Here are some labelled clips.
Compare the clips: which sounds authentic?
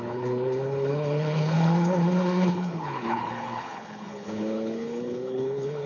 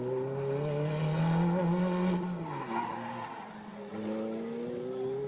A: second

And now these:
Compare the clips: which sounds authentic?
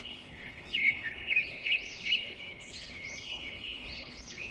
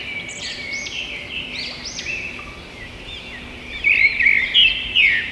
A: second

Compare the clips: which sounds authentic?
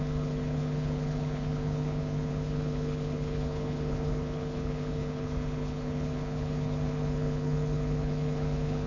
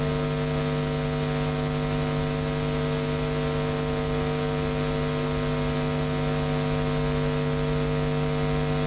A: second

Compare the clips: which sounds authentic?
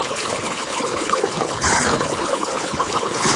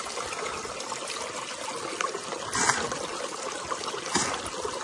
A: second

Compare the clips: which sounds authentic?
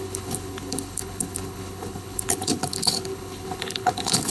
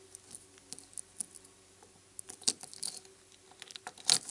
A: second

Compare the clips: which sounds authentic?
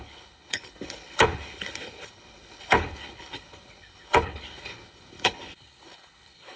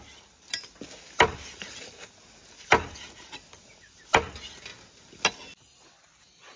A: second